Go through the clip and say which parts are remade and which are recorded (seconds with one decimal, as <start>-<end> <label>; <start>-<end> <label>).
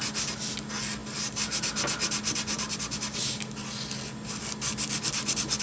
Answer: 0.0-5.6 recorded